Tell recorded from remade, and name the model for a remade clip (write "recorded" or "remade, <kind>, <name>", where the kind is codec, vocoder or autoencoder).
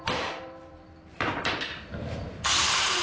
remade, vocoder, BigVGAN v2